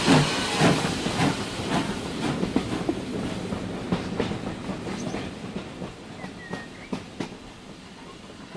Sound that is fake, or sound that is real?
real